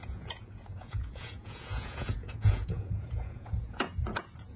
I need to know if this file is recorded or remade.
remade